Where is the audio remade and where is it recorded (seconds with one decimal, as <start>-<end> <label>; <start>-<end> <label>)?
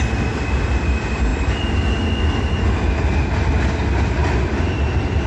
0.0-4.2 recorded; 4.2-5.3 remade